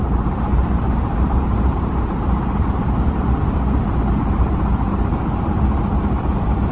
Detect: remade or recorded remade